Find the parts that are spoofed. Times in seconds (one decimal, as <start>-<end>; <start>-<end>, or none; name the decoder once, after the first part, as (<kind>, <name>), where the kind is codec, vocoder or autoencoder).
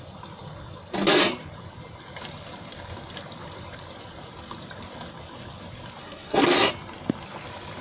6.0-6.7 (codec, SNAC)